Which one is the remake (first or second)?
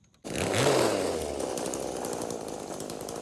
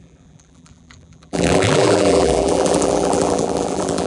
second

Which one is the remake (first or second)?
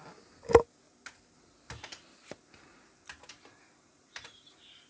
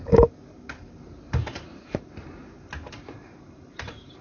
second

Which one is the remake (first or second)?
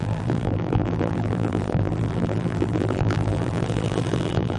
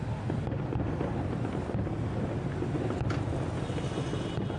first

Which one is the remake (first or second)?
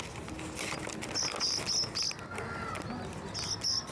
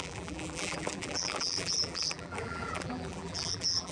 second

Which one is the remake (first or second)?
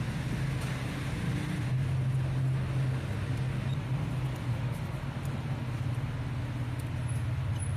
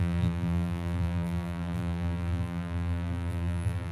second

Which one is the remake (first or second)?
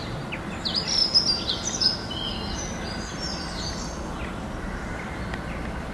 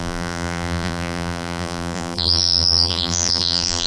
second